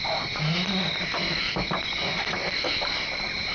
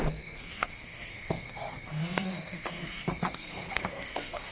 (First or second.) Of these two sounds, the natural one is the first